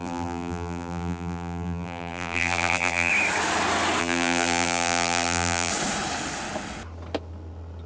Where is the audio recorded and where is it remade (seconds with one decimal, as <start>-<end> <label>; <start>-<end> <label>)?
0.0-3.1 remade; 3.1-4.0 recorded; 4.0-5.7 remade; 5.7-7.9 recorded